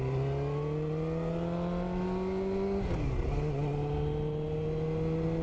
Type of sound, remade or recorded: recorded